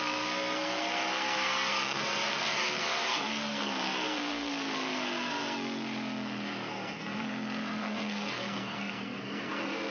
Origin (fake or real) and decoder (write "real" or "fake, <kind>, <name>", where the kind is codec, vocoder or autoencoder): fake, codec, SNAC